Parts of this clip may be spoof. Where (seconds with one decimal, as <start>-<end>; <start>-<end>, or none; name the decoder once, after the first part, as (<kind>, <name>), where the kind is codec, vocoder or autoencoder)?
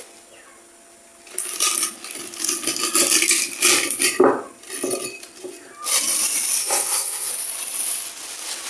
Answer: 6.6-7.3 (codec, SNAC)